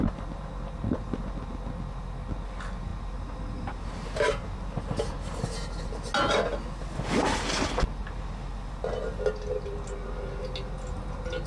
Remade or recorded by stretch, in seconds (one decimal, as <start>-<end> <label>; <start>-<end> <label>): 0.0-11.5 recorded

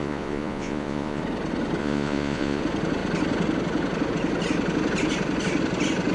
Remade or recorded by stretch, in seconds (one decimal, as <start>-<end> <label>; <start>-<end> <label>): 0.0-1.2 remade; 1.2-1.8 recorded; 1.8-2.6 remade; 2.6-6.1 recorded

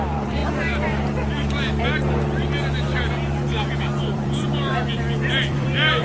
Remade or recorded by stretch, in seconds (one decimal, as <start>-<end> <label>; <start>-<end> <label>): 0.0-0.4 remade; 0.4-4.0 recorded; 4.0-6.0 remade

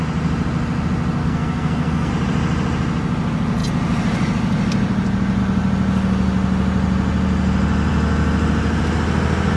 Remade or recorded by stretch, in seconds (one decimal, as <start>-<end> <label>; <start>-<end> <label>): 0.0-1.2 recorded; 1.2-2.1 remade; 2.1-9.6 recorded

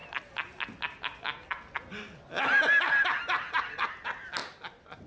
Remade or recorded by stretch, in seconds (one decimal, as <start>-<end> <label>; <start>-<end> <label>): 0.0-5.1 recorded